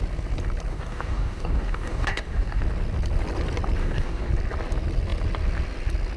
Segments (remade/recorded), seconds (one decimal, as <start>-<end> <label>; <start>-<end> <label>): 0.0-0.7 recorded; 0.7-2.6 remade; 2.6-3.8 recorded; 3.8-4.3 remade; 4.3-6.2 recorded